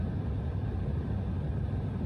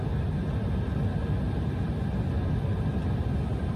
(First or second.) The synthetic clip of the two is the first